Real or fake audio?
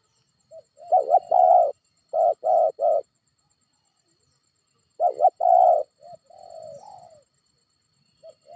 real